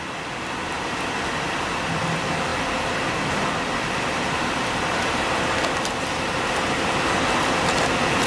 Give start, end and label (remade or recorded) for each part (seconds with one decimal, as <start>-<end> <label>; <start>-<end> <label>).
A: 0.0-8.3 recorded